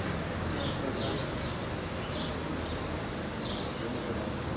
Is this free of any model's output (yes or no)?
yes